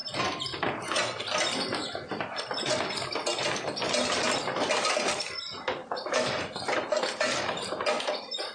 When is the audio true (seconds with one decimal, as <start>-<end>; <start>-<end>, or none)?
0.0-8.5